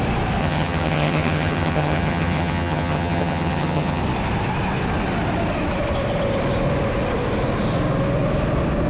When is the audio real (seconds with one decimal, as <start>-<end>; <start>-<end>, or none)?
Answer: 0.0-0.4; 4.0-8.9